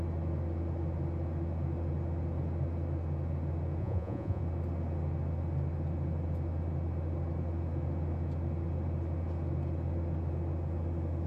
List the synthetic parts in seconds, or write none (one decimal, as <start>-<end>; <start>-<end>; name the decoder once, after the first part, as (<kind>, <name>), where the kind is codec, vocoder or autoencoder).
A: 3.8-4.4 (vocoder, Vocos)